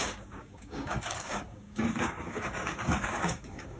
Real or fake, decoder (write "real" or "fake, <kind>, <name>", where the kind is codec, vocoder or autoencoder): fake, codec, DAC